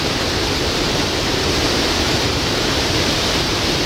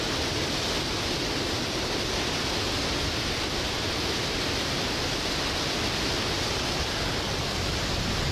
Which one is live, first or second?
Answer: second